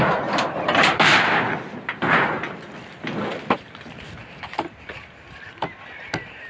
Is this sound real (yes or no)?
yes